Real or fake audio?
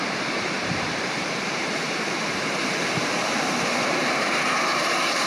fake